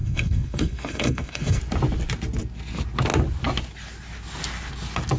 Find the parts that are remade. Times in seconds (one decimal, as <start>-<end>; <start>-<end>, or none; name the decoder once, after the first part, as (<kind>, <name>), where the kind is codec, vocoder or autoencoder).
0.0-1.6 (codec, SNAC)